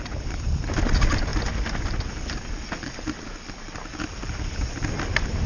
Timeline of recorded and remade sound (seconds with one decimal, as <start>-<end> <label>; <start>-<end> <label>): 0.0-5.5 recorded